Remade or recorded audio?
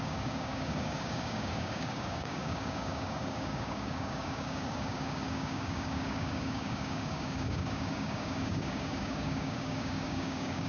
remade